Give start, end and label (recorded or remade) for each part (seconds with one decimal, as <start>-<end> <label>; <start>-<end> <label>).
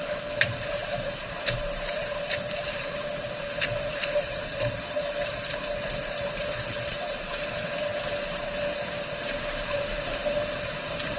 0.0-7.9 remade; 7.9-9.4 recorded; 9.4-11.2 remade